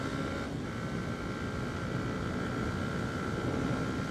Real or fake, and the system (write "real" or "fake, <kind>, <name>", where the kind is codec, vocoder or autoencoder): real